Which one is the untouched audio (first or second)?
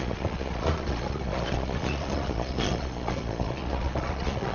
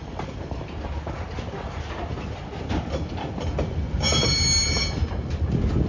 second